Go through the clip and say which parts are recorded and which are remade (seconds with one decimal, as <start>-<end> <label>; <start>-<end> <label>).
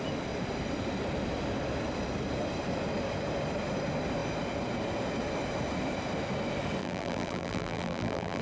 0.0-6.8 recorded; 6.8-8.4 remade